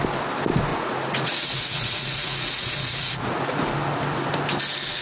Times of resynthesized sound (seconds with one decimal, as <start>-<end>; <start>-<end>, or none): 0.7-3.7